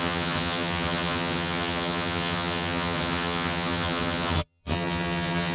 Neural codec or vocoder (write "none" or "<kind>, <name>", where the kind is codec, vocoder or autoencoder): vocoder, HiFi-GAN